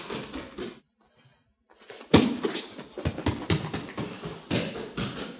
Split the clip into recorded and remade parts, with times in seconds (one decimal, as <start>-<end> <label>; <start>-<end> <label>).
0.0-5.4 recorded

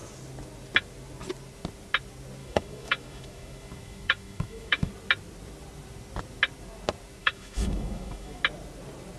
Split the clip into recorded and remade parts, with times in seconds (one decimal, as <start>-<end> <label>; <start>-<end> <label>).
0.0-2.4 recorded; 2.4-4.9 remade; 4.9-7.2 recorded; 7.2-8.4 remade; 8.4-9.2 recorded